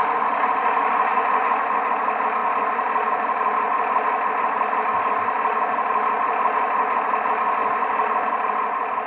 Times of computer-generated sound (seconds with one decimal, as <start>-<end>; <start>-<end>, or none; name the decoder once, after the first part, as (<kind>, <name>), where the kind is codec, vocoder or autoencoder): 1.1-1.8 (vocoder, Vocos)